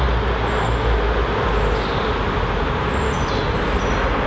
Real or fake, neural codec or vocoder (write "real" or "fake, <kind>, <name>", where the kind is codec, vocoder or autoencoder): real